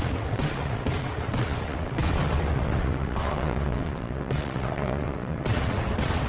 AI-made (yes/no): yes